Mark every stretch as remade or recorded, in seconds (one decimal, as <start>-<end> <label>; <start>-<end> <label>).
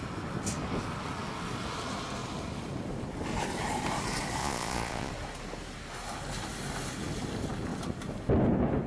0.0-4.4 recorded; 4.4-5.1 remade; 5.1-8.9 recorded